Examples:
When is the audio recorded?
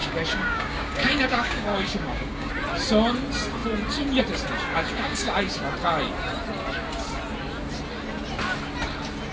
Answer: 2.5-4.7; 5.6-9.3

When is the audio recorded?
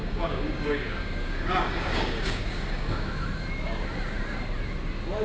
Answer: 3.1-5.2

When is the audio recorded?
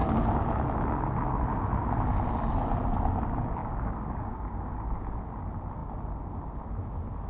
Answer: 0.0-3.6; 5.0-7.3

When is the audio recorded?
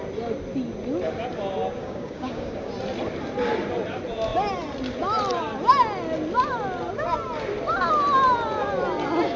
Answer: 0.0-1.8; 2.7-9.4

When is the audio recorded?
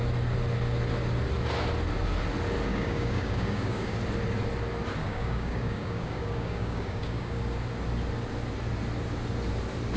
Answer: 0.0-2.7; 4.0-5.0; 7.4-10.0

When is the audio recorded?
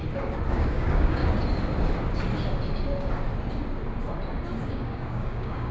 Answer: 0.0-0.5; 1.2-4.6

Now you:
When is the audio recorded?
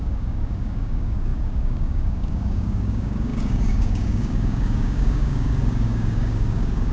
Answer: none